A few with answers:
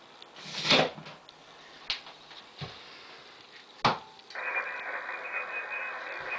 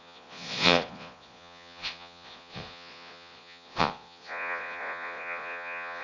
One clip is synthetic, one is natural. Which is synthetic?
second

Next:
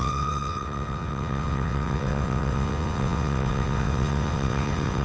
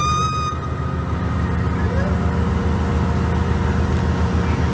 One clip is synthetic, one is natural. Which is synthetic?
first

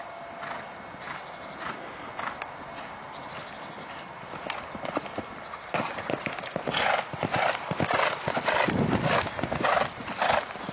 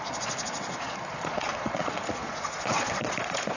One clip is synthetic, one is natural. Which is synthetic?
second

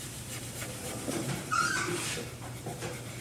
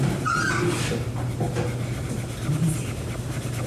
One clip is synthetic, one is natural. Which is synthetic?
first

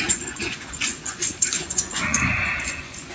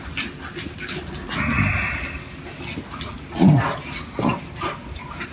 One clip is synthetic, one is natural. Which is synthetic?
first